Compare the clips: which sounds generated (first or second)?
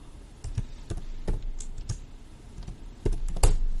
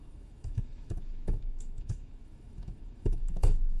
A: second